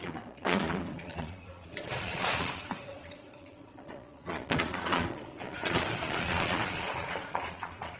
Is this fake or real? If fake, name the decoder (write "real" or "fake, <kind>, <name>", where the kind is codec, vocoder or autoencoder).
fake, vocoder, Vocos